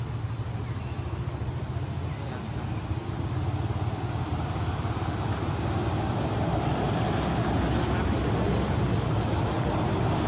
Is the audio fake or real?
real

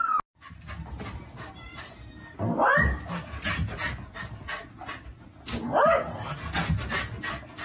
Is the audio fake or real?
real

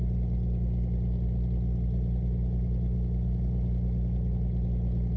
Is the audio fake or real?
real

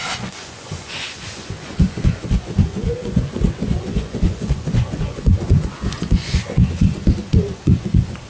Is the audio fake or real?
fake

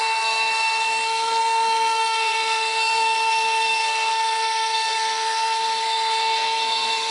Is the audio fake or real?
fake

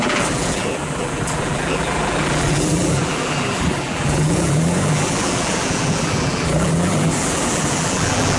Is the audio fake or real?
fake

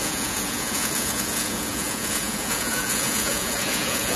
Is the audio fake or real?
fake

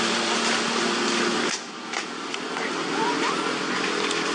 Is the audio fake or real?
real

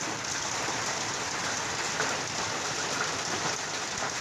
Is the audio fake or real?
real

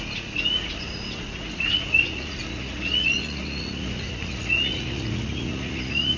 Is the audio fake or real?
fake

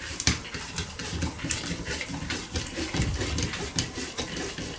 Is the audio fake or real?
real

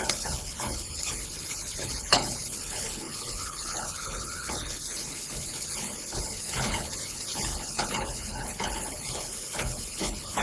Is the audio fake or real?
fake